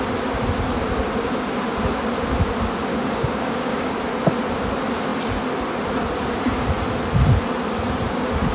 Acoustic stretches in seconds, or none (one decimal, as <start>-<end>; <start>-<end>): 0.0-2.9; 3.9-8.5